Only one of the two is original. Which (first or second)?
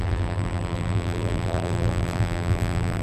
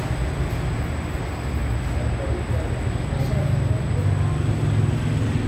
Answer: second